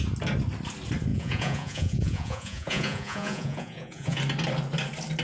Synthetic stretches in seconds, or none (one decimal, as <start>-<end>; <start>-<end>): 1.1-4.2